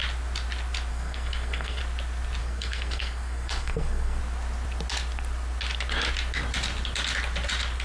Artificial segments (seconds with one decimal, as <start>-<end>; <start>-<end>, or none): 0.9-1.8; 2.4-4.2